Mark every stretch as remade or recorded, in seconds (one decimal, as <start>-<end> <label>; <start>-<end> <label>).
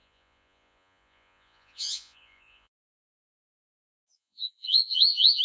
0.0-3.2 remade; 3.2-4.0 recorded; 4.0-5.4 remade